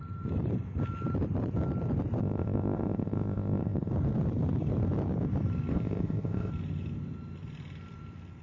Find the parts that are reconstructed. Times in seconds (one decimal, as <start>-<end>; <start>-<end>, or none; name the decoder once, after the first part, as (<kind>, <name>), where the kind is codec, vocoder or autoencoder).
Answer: 2.2-3.9 (codec, ZipCodec); 5.7-6.5